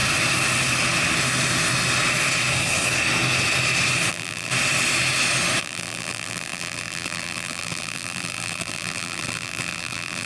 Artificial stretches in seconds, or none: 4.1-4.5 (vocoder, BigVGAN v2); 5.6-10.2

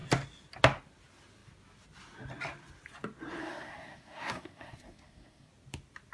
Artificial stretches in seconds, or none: 3.4-5.5 (codec, SNAC)